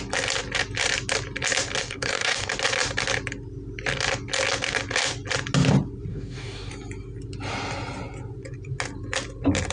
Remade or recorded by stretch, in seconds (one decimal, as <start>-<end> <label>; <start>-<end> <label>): 0.0-1.8 recorded; 1.8-2.5 remade; 2.5-6.1 recorded; 6.1-6.7 remade; 6.7-9.7 recorded